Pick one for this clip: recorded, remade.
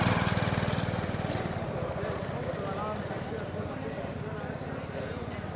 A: recorded